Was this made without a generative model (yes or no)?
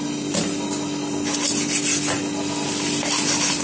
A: yes